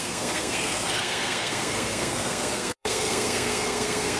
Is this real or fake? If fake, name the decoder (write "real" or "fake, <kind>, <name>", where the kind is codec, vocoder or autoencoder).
fake, codec, SNAC